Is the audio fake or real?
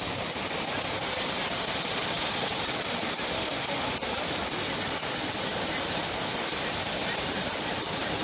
real